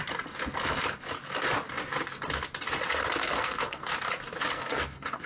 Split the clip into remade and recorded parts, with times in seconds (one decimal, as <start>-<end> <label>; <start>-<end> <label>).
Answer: 0.0-3.2 recorded; 3.2-3.9 remade; 3.9-4.5 recorded; 4.5-5.3 remade